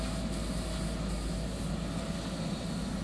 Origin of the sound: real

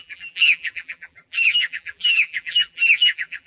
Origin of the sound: fake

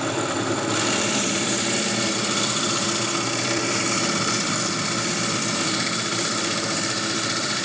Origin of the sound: fake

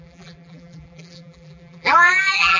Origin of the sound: fake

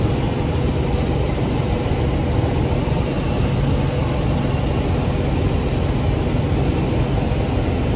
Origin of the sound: real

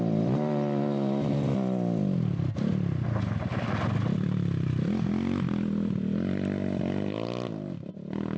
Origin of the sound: fake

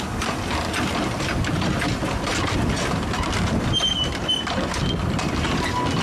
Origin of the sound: real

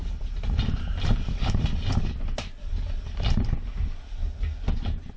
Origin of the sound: real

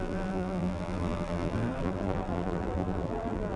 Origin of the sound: fake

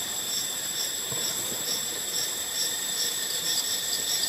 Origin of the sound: fake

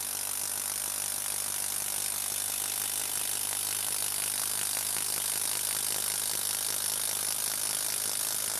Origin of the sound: real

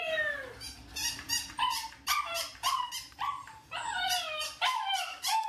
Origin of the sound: fake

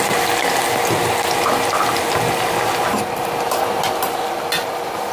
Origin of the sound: fake